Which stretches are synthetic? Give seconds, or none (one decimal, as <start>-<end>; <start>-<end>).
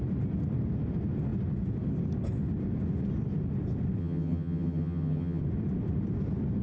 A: 4.0-5.4